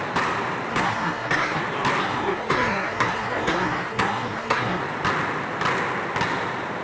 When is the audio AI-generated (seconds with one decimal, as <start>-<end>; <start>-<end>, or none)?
0.7-1.6; 2.0-4.8